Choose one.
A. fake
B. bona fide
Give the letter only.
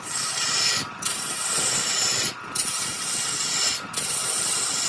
B